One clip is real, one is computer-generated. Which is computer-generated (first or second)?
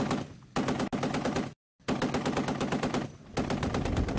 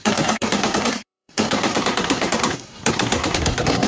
second